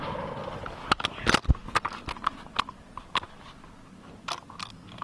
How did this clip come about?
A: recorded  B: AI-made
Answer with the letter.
A